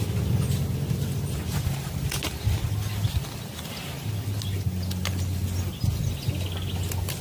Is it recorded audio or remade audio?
recorded